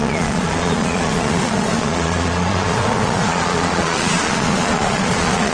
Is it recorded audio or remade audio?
remade